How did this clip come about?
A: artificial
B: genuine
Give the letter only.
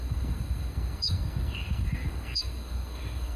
A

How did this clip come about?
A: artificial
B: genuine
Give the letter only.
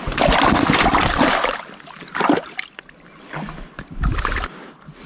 B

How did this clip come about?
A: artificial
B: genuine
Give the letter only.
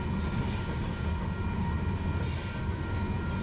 B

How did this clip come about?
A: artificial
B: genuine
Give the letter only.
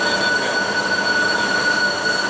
B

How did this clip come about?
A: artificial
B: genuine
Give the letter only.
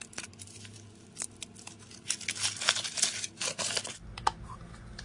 B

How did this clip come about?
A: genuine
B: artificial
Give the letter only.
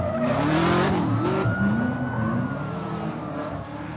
A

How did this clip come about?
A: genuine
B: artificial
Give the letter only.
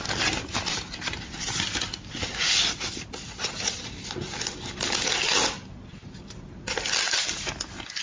A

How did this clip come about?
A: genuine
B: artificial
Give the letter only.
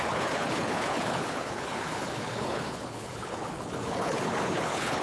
B